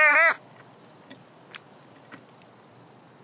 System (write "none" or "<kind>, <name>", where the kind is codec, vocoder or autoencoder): none